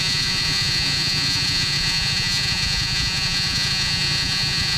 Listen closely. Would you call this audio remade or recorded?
remade